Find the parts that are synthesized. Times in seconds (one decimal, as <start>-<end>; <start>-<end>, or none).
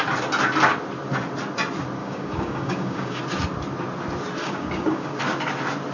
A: 2.0-3.2; 4.4-5.2